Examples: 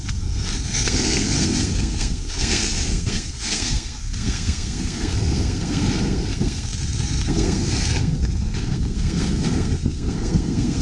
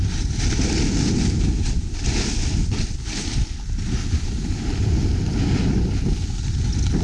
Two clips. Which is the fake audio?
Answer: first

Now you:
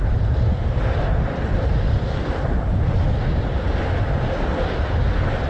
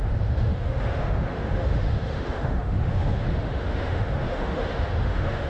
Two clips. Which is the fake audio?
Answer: second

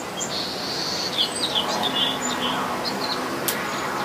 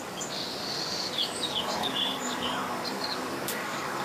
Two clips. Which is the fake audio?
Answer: second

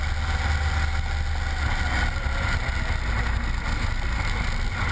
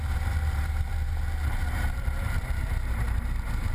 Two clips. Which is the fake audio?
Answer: second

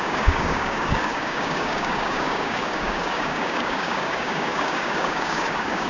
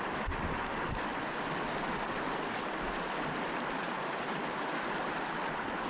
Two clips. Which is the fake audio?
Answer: first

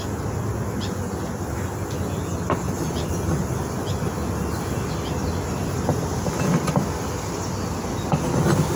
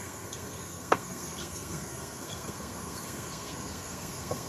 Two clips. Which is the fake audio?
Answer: second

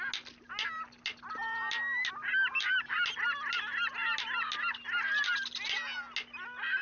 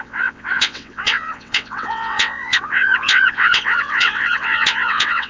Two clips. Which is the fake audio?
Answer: second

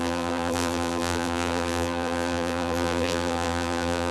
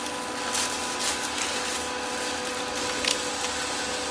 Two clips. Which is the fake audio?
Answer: first